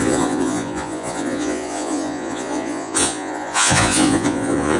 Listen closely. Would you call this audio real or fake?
fake